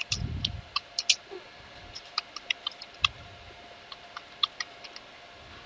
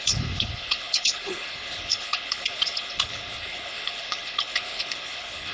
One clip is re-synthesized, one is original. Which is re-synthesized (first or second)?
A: second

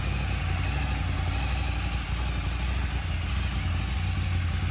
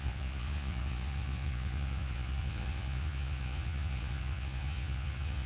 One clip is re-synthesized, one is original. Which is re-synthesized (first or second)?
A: second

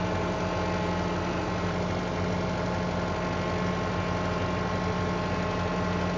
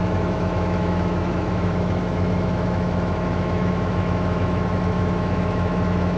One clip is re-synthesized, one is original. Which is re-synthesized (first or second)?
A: second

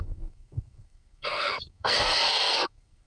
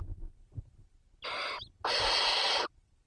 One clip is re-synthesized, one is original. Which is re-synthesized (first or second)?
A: first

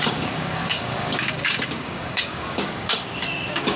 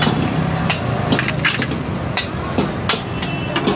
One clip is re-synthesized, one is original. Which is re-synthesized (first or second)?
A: first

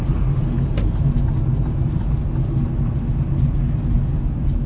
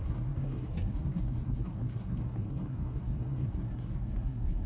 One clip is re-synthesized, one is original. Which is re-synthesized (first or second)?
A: second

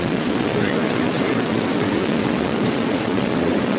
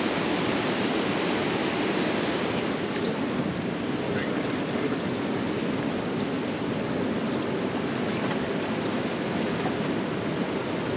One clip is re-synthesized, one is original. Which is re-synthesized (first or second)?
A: first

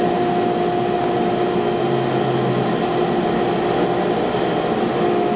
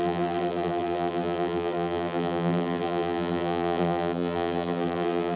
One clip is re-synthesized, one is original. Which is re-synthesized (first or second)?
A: second